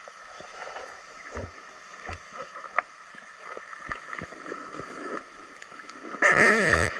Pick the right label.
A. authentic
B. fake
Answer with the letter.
B